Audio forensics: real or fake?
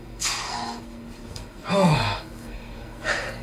fake